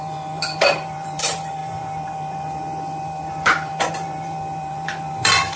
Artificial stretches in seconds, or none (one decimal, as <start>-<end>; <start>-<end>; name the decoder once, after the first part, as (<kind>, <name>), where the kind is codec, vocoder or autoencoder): 0.0-5.6 (vocoder, BigVGAN v2)